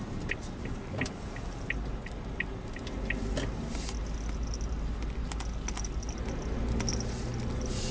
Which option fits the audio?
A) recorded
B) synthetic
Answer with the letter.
A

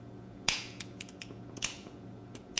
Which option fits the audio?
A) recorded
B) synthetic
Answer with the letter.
B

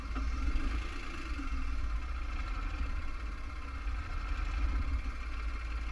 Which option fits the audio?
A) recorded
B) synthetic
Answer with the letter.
A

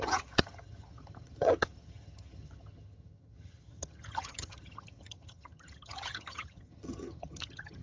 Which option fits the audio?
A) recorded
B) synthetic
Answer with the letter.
B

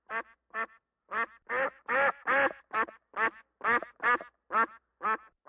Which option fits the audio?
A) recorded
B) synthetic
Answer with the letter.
A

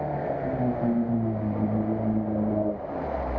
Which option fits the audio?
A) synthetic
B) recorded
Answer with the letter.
B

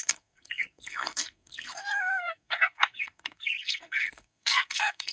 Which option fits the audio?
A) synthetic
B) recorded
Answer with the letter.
A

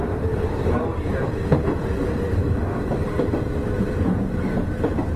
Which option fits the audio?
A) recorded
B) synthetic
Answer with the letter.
B